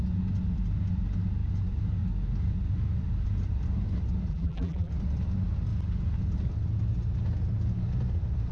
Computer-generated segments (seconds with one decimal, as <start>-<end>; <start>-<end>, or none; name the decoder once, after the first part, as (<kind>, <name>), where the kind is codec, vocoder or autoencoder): 4.3-4.9 (vocoder, BigVGAN v2)

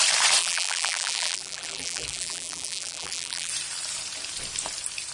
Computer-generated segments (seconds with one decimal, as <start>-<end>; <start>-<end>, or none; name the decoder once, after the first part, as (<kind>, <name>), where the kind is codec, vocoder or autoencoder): 0.4-3.5 (vocoder, BigVGAN v2)

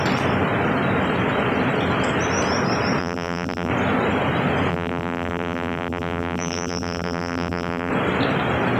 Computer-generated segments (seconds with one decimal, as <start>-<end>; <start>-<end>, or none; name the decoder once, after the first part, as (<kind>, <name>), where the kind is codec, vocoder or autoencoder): 3.0-3.7 (vocoder, BigVGAN v2); 4.7-7.9

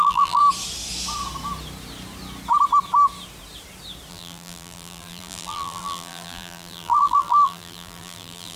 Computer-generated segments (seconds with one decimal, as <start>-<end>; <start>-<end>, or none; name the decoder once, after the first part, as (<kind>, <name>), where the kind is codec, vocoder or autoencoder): 0.0-0.4 (vocoder, BigVGAN v2); 4.1-8.6

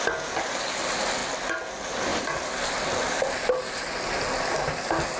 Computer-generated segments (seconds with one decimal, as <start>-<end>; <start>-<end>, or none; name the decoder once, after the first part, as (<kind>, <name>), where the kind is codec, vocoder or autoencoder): 1.2-1.7 (vocoder, BigVGAN v2); 2.1-4.1

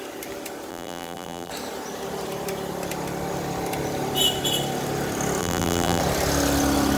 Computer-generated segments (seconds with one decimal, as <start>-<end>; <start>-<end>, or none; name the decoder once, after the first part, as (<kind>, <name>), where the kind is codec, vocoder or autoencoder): 0.7-1.5 (vocoder, BigVGAN v2); 5.4-6.0

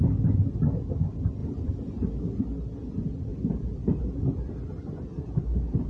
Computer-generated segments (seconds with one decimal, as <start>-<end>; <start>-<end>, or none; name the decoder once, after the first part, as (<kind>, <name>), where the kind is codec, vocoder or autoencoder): 3.3-4.5 (vocoder, BigVGAN v2)

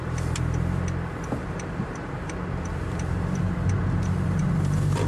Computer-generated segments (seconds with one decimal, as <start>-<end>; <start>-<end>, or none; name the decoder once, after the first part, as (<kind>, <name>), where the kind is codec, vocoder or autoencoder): 1.4-4.5 (vocoder, BigVGAN v2)